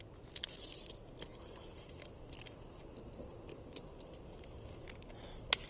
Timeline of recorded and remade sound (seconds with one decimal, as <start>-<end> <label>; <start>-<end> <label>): 0.0-5.7 recorded